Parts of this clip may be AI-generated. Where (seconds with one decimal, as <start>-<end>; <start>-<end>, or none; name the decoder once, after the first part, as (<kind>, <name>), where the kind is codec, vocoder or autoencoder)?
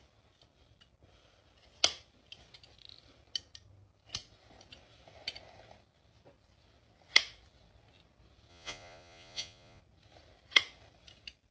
8.5-9.8 (vocoder, Vocos)